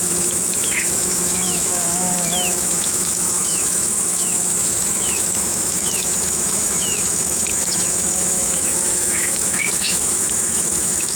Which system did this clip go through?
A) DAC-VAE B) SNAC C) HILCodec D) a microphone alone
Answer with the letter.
A